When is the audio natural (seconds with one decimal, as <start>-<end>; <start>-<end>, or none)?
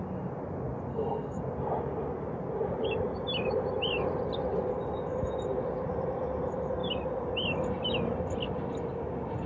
0.0-0.9; 1.4-9.5